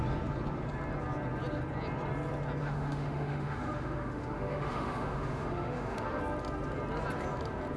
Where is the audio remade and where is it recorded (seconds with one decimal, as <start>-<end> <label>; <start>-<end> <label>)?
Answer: 0.0-2.6 recorded; 2.6-6.2 remade; 6.2-7.8 recorded